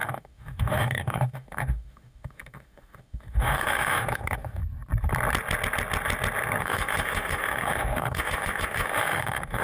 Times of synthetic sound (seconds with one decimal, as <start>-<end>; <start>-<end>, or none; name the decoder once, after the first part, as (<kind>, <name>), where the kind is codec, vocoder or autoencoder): 0.0-4.6 (autoencoder, DAC-VAE); 6.6-9.6